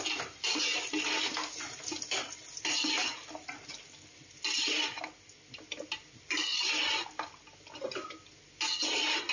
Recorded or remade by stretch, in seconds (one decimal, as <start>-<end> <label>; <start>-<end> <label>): 0.0-9.3 recorded